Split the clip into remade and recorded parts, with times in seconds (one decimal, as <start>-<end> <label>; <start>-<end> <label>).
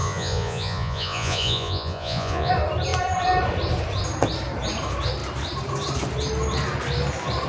0.0-2.5 remade; 2.5-7.5 recorded